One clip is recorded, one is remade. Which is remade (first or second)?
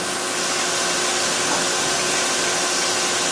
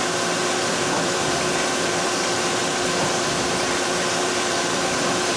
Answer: second